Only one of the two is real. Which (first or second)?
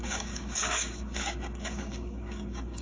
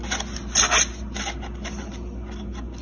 second